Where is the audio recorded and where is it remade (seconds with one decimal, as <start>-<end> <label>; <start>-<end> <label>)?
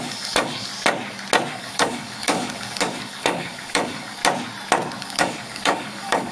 0.0-0.7 remade; 0.7-1.5 recorded; 1.5-4.2 remade; 4.2-5.0 recorded; 5.0-6.3 remade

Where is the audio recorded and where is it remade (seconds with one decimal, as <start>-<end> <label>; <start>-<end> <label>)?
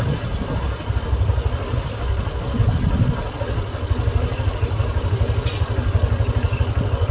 0.0-7.1 recorded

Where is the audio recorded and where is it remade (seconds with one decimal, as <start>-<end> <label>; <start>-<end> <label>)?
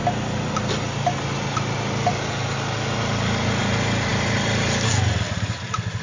0.0-6.0 recorded